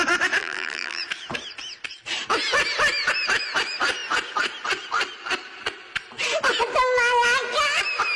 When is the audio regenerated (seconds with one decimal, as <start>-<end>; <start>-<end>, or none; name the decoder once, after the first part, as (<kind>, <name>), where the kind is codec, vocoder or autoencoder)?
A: 0.4-1.0 (vocoder, BigVGAN v2)